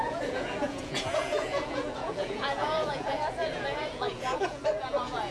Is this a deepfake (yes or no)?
yes